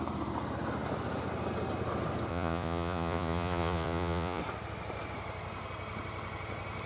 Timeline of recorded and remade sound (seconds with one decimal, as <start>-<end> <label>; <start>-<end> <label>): 0.0-2.3 recorded; 2.3-4.4 remade; 4.4-6.9 recorded